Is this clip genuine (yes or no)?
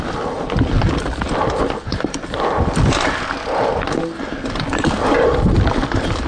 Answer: yes